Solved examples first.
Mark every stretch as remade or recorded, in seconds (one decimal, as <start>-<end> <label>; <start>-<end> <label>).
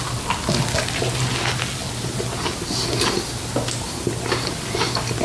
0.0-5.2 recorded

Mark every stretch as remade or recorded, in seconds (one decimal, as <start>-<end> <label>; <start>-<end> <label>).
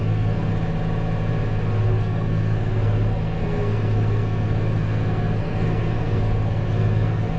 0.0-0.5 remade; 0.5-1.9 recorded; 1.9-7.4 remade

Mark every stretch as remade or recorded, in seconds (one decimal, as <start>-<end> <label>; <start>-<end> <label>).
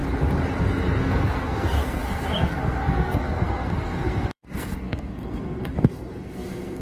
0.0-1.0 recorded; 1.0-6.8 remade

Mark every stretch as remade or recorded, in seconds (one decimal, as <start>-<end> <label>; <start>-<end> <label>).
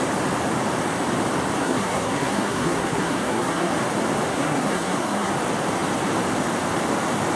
0.0-1.6 recorded; 1.6-3.7 remade; 3.7-4.3 recorded; 4.3-5.3 remade; 5.3-7.4 recorded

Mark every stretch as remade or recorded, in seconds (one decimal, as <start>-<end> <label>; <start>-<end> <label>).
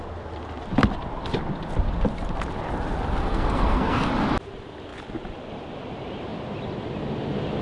0.0-3.2 recorded; 3.2-4.1 remade; 4.1-7.6 recorded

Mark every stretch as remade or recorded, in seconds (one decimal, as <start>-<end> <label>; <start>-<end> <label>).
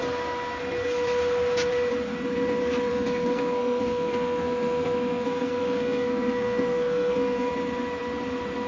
0.0-2.9 recorded; 2.9-7.5 remade; 7.5-8.7 recorded